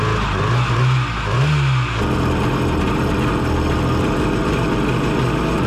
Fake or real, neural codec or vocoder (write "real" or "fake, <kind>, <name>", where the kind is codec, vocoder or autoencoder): real